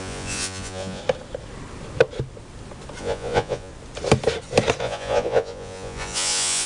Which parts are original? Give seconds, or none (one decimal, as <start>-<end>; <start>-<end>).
1.0-3.0; 3.7-4.8